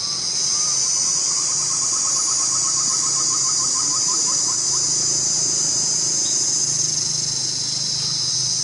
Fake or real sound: real